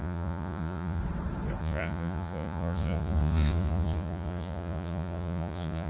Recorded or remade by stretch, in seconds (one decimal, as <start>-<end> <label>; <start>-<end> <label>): 0.0-1.0 remade; 1.0-1.6 recorded; 1.6-5.9 remade